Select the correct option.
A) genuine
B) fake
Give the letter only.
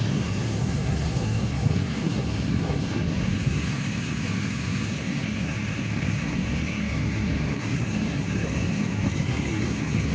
B